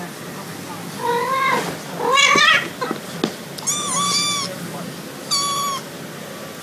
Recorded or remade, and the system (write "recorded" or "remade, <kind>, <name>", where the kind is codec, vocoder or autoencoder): recorded